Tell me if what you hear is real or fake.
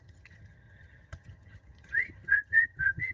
fake